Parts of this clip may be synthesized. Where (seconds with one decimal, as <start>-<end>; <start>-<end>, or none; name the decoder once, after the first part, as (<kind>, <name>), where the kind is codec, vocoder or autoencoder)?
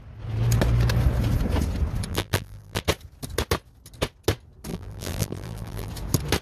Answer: 2.1-2.8 (vocoder, BigVGAN v2); 4.7-5.9